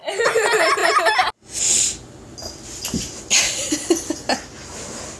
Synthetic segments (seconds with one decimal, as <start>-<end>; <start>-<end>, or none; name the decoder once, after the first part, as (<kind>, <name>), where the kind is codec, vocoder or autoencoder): none